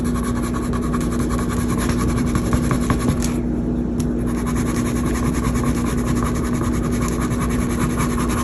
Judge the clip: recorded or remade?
recorded